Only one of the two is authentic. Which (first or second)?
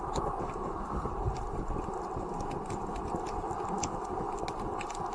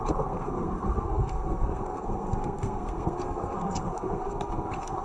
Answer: first